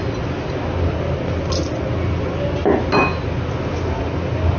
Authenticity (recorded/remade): recorded